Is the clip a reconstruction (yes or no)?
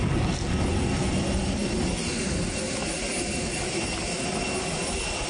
no